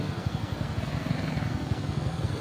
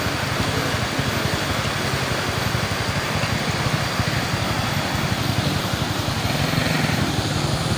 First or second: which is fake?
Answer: first